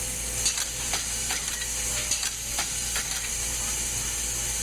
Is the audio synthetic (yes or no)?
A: no